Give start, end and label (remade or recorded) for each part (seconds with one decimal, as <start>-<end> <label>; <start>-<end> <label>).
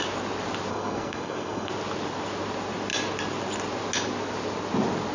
0.0-0.7 recorded; 0.7-1.7 remade; 1.7-5.1 recorded